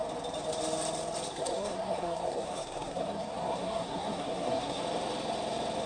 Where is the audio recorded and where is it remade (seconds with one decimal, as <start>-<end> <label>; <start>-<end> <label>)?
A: 0.0-1.3 recorded; 1.3-4.8 remade; 4.8-5.9 recorded